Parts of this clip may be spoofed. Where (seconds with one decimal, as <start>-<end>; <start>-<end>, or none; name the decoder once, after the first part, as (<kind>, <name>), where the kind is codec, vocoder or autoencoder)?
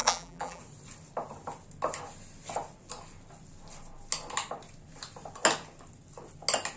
0.0-0.6 (vocoder, BigVGAN v2)